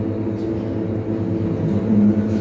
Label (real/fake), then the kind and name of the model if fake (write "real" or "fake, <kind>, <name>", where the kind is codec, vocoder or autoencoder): real